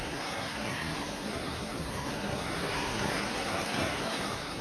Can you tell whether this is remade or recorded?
remade